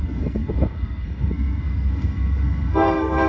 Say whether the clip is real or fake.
fake